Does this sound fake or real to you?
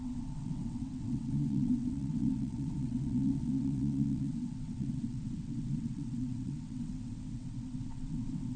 fake